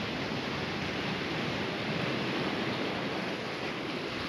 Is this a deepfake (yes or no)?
no